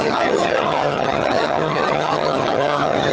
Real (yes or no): no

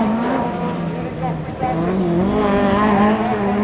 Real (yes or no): yes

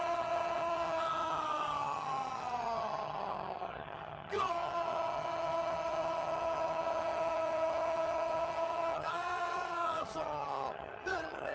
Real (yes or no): no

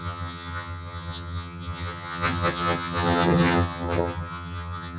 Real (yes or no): no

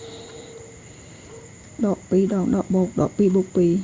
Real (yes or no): yes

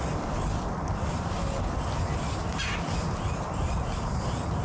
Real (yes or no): yes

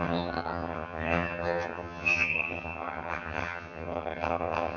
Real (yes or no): no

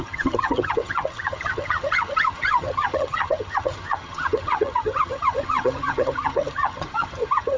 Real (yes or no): no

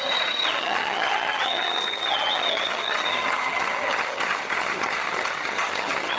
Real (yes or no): no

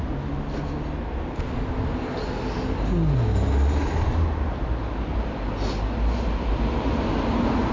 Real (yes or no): yes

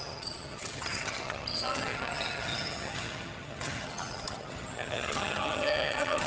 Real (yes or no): no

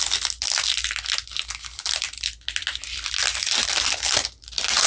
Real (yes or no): yes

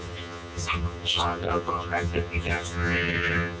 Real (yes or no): no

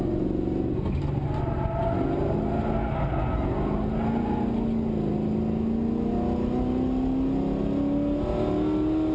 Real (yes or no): yes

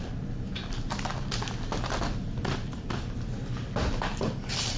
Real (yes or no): yes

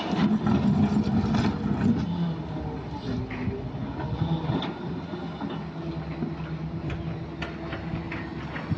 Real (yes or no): yes